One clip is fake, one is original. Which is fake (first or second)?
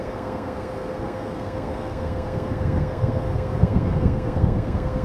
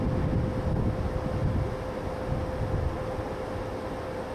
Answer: first